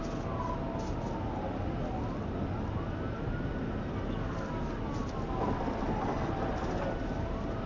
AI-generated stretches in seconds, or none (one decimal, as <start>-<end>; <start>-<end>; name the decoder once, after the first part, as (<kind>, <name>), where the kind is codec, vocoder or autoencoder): none